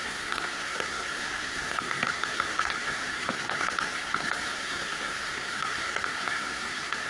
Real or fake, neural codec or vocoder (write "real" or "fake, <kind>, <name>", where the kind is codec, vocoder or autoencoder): fake, codec, SNAC